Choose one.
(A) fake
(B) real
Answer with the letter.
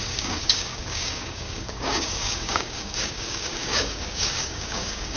A